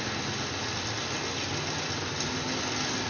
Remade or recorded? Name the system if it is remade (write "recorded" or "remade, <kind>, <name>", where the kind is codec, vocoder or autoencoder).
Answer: recorded